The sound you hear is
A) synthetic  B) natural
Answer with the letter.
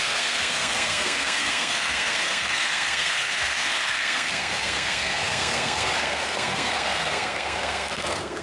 A